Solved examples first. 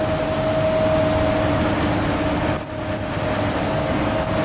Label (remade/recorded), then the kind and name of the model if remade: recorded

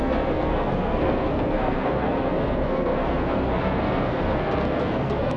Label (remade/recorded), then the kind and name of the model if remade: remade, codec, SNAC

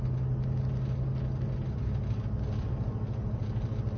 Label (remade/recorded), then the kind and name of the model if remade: recorded